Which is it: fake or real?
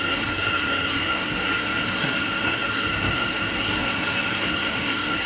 fake